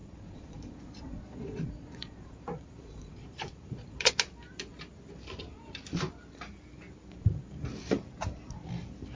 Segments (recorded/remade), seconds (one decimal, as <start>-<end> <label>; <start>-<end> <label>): 0.0-4.1 remade; 4.1-9.1 recorded

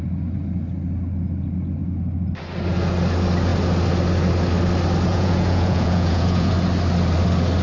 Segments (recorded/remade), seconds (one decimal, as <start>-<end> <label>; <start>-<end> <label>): 0.0-5.1 recorded; 5.1-6.5 remade; 6.5-7.6 recorded